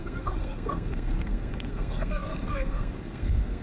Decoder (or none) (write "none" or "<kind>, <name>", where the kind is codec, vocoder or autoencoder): codec, SNAC